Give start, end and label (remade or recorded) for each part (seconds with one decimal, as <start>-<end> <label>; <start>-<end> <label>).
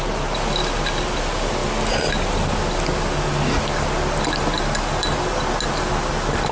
0.0-6.5 recorded